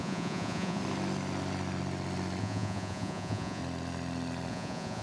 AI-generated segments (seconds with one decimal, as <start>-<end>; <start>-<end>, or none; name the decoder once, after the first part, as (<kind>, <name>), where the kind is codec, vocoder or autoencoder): 0.0-0.8 (vocoder, Vocos); 2.4-3.6; 4.5-5.0